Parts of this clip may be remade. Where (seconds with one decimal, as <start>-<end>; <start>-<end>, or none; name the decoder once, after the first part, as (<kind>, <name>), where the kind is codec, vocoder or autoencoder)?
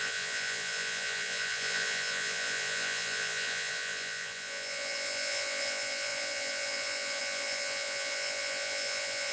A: 0.0-9.3 (vocoder, Vocos)